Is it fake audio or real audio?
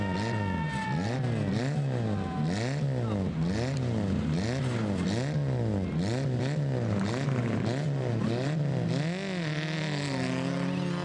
real